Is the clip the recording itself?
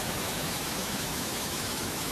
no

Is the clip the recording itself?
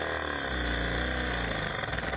yes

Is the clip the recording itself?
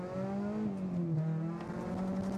yes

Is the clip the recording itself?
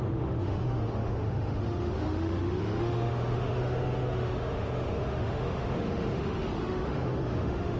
no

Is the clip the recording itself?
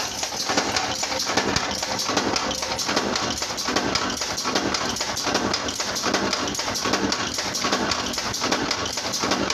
yes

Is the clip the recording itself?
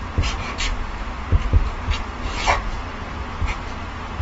yes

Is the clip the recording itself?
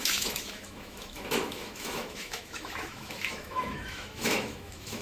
no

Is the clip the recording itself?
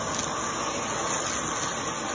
yes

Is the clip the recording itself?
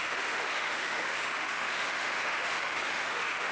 no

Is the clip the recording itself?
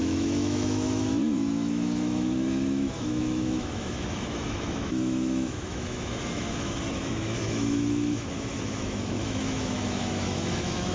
no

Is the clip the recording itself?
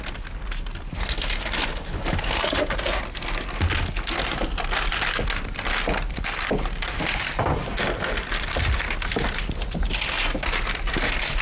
yes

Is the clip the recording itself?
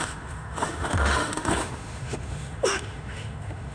no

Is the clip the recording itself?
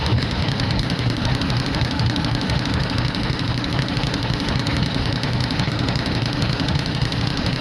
no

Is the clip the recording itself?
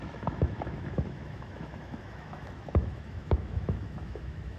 no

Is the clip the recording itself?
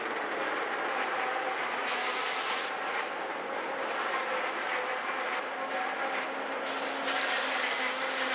yes